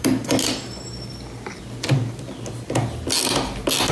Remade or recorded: recorded